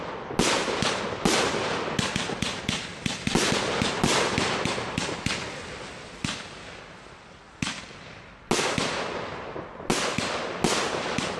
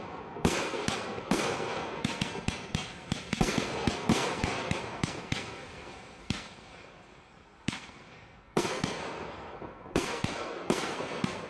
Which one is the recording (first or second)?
first